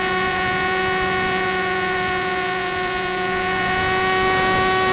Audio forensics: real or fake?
fake